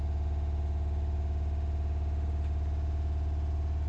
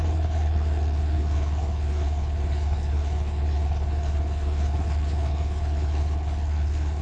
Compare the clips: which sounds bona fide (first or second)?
first